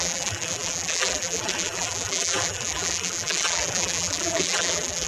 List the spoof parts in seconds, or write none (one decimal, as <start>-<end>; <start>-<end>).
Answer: 0.0-5.1